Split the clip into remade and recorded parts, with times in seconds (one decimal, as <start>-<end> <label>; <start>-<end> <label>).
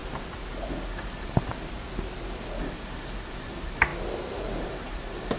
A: 0.0-0.9 recorded; 0.9-1.5 remade; 1.5-2.6 recorded; 2.6-3.9 remade; 3.9-4.6 recorded; 4.6-5.4 remade